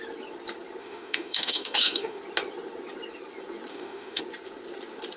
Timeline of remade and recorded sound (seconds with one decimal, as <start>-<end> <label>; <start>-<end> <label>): 0.0-0.8 recorded; 0.8-2.2 remade; 2.2-3.7 recorded; 3.7-4.2 remade; 4.2-5.2 recorded